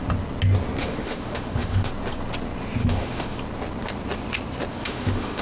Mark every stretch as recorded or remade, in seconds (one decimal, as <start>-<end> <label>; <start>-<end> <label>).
0.0-0.8 recorded; 0.8-1.9 remade; 1.9-2.8 recorded; 2.8-3.4 remade; 3.4-4.7 recorded; 4.7-5.4 remade